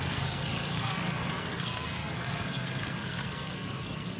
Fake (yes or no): yes